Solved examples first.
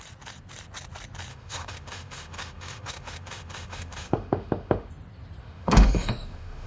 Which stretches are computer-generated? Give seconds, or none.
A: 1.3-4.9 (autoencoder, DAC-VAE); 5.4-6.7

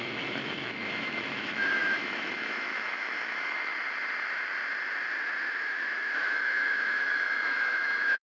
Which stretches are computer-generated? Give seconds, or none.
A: 0.0-3.7 (autoencoder, DAC-VAE); 5.5-8.3